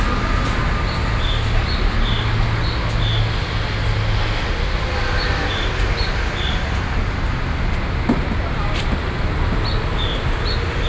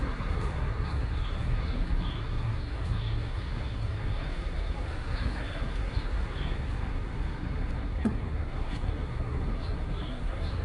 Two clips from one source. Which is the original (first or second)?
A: first